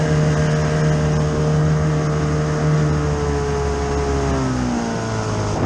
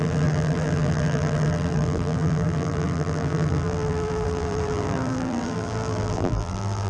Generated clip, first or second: second